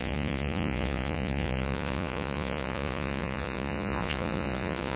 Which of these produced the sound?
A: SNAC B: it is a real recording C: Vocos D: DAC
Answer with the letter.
C